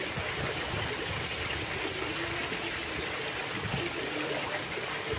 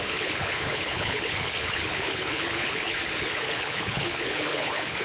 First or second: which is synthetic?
second